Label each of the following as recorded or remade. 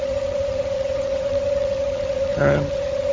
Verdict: remade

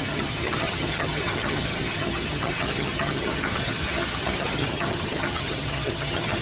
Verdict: remade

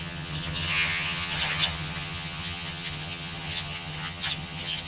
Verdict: remade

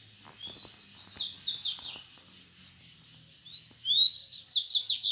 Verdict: recorded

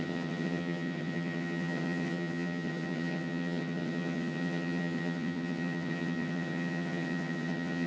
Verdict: remade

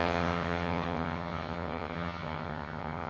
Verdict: remade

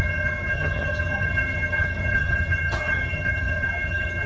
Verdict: remade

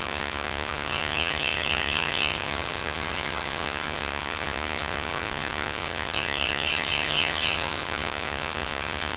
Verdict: remade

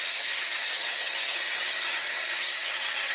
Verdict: remade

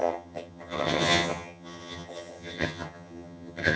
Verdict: remade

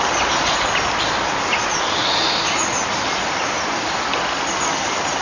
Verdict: recorded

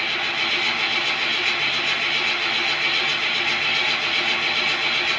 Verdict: recorded